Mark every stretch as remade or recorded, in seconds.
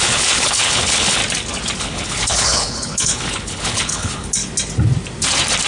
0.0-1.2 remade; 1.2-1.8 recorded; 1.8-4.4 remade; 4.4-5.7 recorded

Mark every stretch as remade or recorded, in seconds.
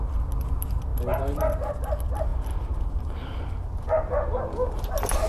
0.0-5.3 recorded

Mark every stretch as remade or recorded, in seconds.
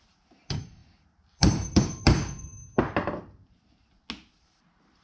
0.0-2.5 remade; 2.5-4.3 recorded; 4.3-5.0 remade